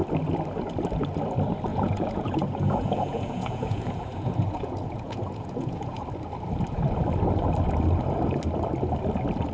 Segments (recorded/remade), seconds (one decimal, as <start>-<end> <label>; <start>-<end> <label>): 0.0-1.7 recorded; 1.7-6.0 remade; 6.0-9.5 recorded